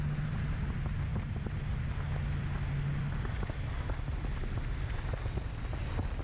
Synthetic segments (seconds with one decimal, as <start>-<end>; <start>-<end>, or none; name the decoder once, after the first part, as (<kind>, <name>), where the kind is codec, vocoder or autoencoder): none